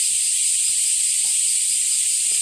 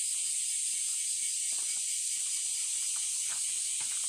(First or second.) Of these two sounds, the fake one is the first